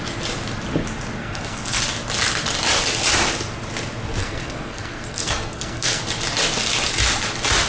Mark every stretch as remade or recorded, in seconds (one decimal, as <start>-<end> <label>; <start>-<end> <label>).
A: 0.0-1.2 recorded; 1.2-1.8 remade; 1.8-4.2 recorded; 4.2-6.0 remade; 6.0-7.7 recorded